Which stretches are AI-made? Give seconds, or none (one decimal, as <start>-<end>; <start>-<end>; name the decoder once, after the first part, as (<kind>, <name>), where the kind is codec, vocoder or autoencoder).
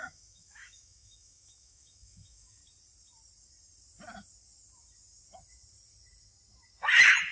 0.0-2.6 (autoencoder, DAC-VAE)